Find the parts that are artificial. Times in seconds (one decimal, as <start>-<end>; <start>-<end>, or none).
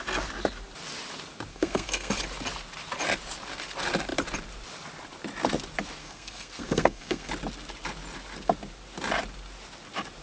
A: 1.5-2.1; 6.0-7.3